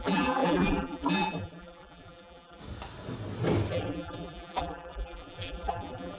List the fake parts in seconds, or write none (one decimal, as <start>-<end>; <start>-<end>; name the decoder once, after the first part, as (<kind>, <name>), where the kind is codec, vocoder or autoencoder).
0.0-2.6 (vocoder, BigVGAN v2); 3.7-6.2